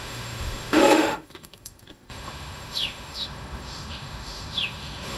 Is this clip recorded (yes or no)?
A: no